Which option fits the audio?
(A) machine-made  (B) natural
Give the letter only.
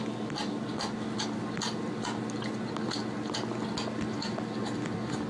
B